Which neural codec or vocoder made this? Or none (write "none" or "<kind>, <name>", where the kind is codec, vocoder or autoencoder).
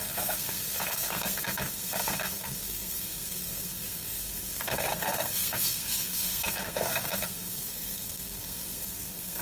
codec, SNAC